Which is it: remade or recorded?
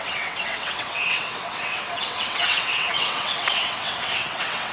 remade